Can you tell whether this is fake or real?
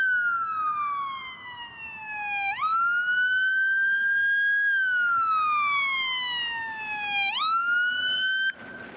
real